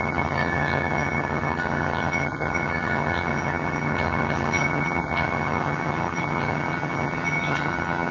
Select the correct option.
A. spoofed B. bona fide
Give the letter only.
A